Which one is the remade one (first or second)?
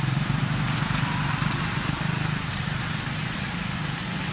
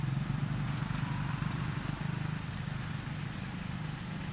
first